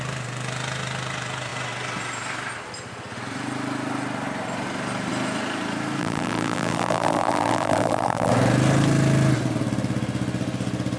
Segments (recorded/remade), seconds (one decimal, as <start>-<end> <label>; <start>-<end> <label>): 0.0-6.0 recorded; 6.0-8.3 remade; 8.3-11.0 recorded